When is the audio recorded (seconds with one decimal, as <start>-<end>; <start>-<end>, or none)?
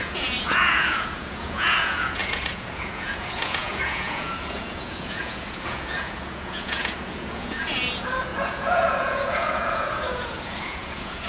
none